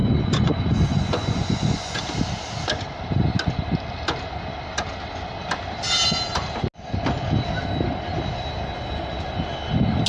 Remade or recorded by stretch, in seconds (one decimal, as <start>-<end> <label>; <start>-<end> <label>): 0.0-2.0 remade; 2.0-10.1 recorded